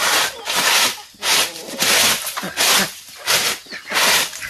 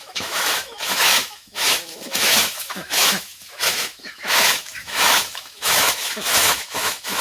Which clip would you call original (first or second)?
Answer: first